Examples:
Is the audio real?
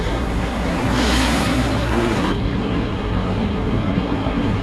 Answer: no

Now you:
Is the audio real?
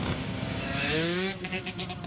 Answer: no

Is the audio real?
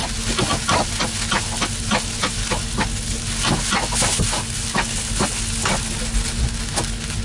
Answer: yes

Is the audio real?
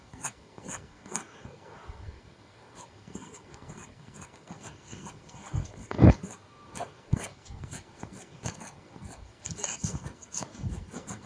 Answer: no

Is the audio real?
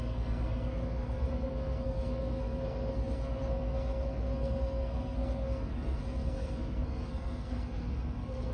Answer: no